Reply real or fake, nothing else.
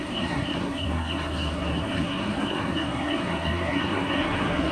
fake